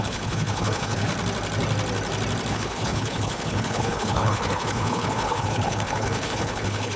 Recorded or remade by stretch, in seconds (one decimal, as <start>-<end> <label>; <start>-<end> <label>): 0.0-1.1 remade; 1.1-2.5 recorded; 2.5-7.0 remade